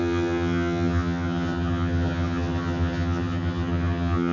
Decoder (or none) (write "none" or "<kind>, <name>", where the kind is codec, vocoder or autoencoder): vocoder, HiFi-GAN